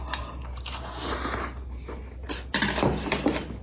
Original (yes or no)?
yes